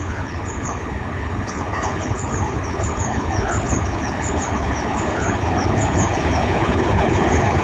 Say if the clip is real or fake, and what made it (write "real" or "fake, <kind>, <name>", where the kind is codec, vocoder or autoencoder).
fake, codec, HILCodec